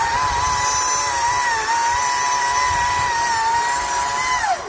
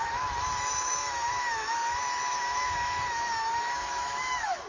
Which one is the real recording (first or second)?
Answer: first